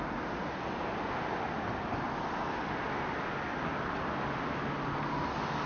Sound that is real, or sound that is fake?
real